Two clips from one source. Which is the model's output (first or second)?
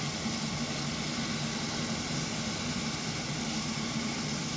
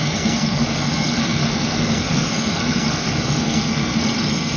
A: second